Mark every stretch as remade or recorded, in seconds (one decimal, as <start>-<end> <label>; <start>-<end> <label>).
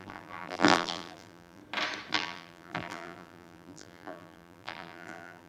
0.0-1.6 remade; 1.6-2.1 recorded; 2.1-5.5 remade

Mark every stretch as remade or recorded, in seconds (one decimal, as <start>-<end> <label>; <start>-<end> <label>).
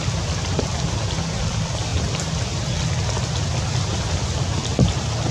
0.0-1.9 remade; 1.9-4.0 recorded; 4.0-4.6 remade; 4.6-5.3 recorded